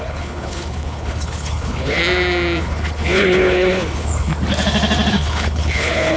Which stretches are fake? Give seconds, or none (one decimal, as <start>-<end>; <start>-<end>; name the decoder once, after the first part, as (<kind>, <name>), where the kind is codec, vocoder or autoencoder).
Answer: 0.0-2.0 (codec, HILCodec); 2.6-4.3; 5.1-6.2